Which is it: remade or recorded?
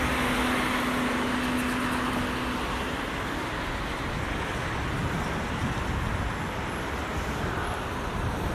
recorded